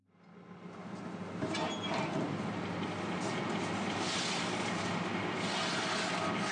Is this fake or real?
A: real